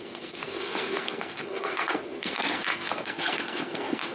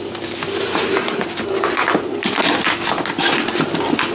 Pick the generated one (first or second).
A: first